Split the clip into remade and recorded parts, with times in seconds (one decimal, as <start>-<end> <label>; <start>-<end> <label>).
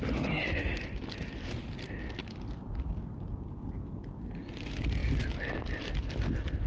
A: 0.0-2.2 recorded; 2.2-2.8 remade; 2.8-6.7 recorded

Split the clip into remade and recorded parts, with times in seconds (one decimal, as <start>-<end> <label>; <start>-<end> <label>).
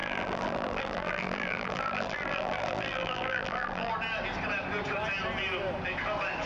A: 0.0-3.9 remade; 3.9-6.5 recorded